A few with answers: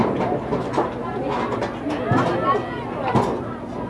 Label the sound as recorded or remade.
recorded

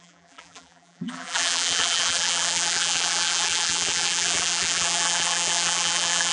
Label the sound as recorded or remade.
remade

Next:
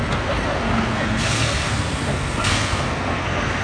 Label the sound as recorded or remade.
remade